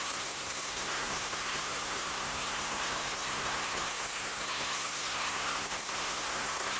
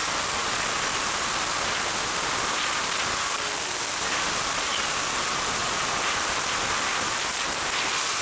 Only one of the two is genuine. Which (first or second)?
second